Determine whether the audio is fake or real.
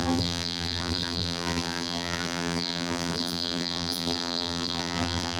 fake